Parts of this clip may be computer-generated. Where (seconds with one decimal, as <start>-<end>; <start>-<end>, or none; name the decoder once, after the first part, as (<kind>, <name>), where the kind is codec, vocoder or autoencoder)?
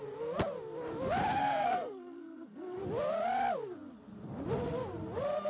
1.4-2.8 (codec, SNAC)